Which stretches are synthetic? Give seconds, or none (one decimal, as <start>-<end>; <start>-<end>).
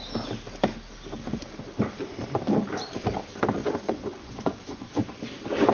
3.6-5.3